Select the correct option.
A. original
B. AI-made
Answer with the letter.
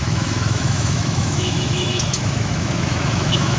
B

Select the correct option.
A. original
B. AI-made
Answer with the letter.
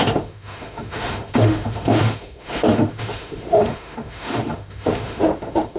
B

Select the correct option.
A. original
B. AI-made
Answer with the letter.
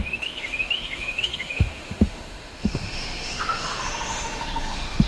B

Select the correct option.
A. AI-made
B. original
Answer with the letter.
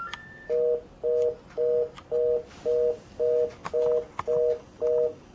B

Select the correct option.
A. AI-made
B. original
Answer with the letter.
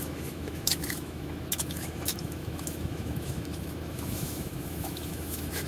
A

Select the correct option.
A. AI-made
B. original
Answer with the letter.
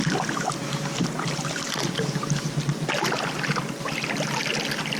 B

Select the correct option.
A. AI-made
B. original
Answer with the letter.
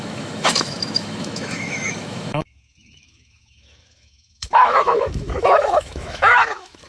A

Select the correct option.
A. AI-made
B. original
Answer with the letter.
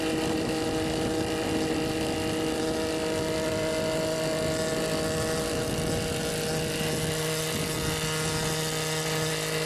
B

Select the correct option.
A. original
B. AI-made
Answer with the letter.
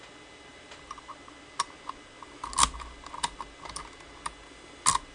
A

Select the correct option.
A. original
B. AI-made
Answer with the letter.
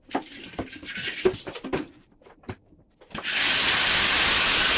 A